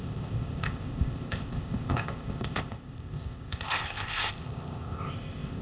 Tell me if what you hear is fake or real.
fake